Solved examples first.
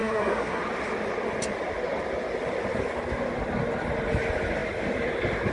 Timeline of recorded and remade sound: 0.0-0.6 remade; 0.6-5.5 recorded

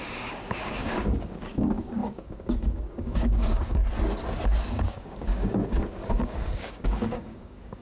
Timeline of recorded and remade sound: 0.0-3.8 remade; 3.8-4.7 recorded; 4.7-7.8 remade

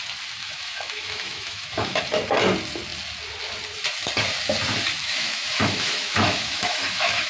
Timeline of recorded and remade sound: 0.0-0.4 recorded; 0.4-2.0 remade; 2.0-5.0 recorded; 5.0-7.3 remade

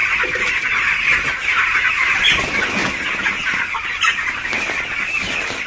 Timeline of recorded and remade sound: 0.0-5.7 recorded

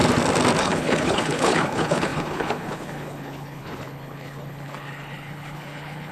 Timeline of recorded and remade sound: 0.0-0.6 recorded; 0.6-6.1 remade